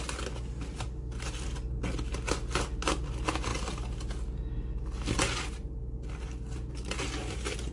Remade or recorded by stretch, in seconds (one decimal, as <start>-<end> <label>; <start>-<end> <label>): 0.0-7.7 recorded